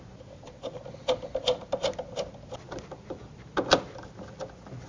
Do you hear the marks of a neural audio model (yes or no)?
no